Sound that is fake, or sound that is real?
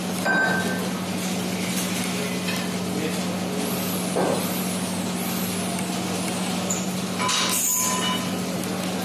real